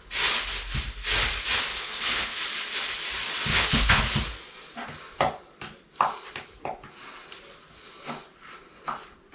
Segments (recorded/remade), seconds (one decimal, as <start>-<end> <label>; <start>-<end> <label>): 0.0-1.7 recorded; 1.7-2.4 remade; 2.4-3.5 recorded; 3.5-4.0 remade; 4.0-9.3 recorded